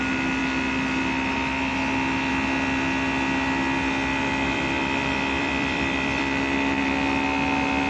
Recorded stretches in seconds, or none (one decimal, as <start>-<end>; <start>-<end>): 0.0-4.1; 6.9-7.9